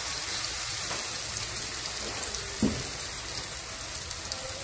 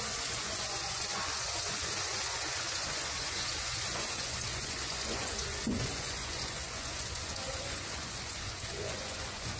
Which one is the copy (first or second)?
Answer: second